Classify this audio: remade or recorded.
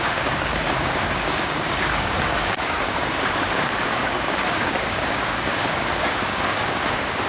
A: remade